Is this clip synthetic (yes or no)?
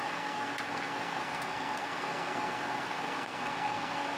yes